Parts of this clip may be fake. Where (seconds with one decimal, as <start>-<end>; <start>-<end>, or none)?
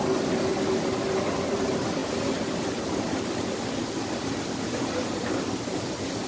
none